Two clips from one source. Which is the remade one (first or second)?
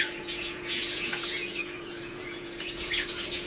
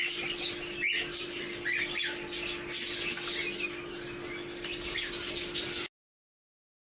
first